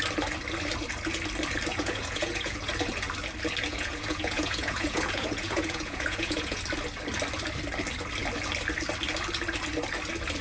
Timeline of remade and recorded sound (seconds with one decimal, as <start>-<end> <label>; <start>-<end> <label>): 0.0-1.7 recorded; 1.7-2.7 remade; 2.7-3.7 recorded; 3.7-6.6 remade; 6.6-10.4 recorded